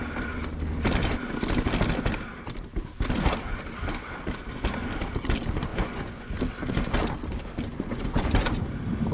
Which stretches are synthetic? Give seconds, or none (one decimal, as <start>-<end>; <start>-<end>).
5.7-6.4; 7.7-8.7